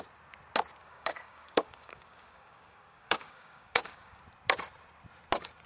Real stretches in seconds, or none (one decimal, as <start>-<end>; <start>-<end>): 0.0-0.8; 4.2-5.7